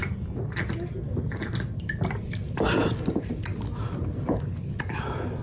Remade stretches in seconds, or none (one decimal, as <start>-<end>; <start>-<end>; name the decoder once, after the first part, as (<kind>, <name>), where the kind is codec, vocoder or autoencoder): 3.1-3.5 (vocoder, BigVGAN v2)

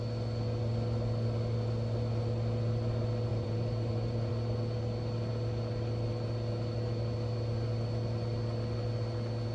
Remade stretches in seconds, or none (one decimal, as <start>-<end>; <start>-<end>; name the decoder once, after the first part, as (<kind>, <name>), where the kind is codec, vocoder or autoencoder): 3.3-4.3 (vocoder, BigVGAN v2)

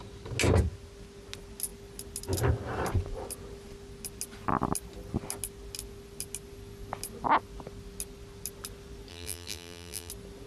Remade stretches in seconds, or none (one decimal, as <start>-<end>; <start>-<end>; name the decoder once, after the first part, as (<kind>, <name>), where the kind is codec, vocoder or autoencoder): 9.1-10.1 (vocoder, BigVGAN v2)

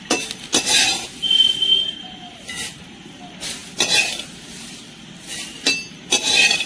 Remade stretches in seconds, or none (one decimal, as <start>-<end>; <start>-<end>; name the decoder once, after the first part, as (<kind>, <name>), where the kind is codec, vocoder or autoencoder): none

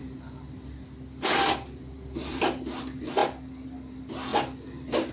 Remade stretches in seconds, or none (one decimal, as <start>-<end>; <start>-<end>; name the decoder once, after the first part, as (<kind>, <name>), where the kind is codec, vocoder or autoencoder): 0.0-2.4 (vocoder, BigVGAN v2)